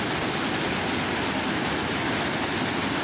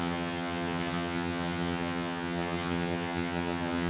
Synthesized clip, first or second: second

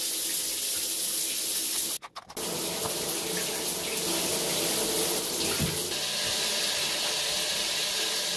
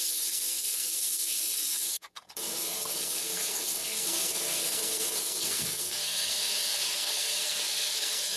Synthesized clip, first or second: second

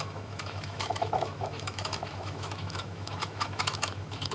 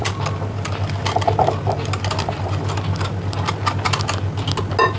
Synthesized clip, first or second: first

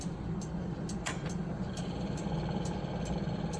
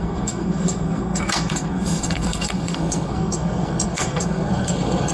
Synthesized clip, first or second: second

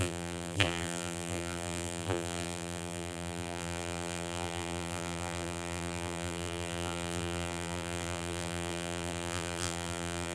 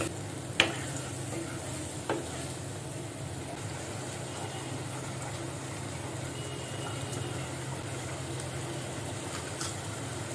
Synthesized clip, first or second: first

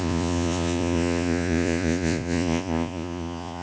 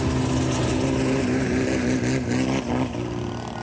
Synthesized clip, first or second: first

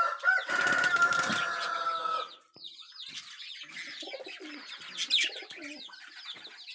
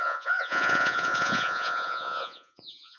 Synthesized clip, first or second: second